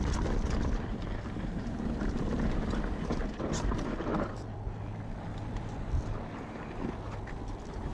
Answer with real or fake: fake